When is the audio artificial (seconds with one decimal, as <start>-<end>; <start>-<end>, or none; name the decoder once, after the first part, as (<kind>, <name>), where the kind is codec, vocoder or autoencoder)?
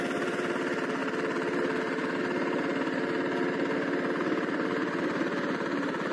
none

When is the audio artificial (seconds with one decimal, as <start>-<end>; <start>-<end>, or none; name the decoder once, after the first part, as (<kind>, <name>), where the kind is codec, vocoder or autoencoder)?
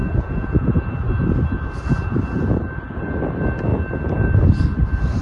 0.0-0.8 (vocoder, Vocos)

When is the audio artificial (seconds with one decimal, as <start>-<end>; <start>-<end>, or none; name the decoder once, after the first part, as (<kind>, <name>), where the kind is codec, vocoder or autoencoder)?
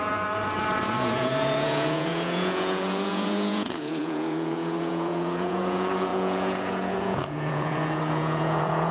0.0-8.9 (vocoder, Vocos)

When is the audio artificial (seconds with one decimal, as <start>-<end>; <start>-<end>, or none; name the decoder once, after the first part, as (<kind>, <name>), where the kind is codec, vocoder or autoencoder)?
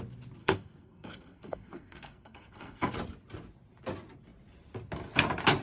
0.4-2.9 (codec, SNAC)